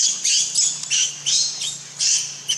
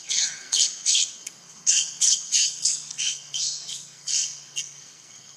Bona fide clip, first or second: first